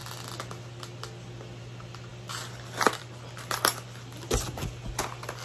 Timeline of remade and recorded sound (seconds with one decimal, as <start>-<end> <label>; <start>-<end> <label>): 0.0-5.4 recorded